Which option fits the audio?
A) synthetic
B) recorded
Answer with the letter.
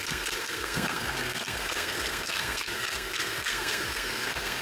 A